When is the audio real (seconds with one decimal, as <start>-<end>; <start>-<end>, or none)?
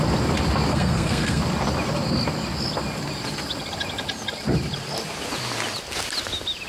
0.0-0.7; 1.4-6.7